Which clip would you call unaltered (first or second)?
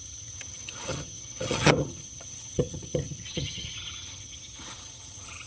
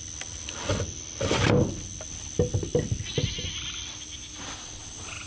second